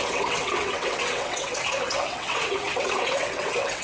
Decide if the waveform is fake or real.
fake